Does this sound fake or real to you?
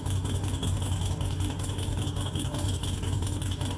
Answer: fake